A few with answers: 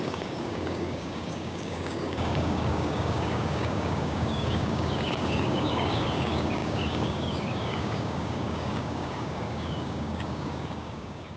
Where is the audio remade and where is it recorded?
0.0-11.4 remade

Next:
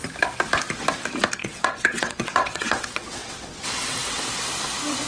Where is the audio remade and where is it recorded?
0.0-1.4 recorded; 1.4-4.2 remade; 4.2-5.1 recorded

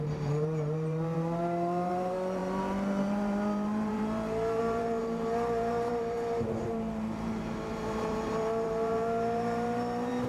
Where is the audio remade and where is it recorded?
0.0-10.3 remade

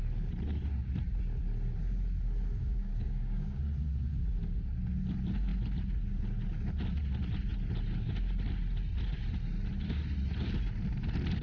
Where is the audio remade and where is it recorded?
0.0-2.6 recorded; 2.6-3.6 remade; 3.6-11.4 recorded

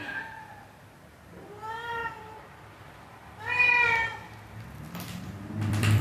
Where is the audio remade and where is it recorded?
0.0-2.0 remade; 2.0-2.8 recorded; 2.8-4.1 remade; 4.1-5.2 recorded; 5.2-6.0 remade